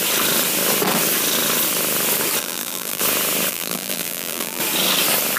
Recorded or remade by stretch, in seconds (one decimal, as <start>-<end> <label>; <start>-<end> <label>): 0.0-2.4 recorded; 2.4-3.0 remade; 3.0-3.5 recorded; 3.5-4.6 remade; 4.6-5.4 recorded